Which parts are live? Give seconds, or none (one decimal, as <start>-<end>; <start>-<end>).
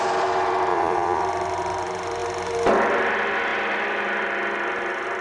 0.0-0.7; 1.2-5.2